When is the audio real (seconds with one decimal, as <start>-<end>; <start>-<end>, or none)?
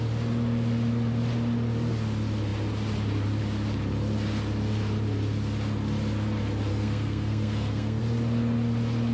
0.0-6.7; 8.0-9.1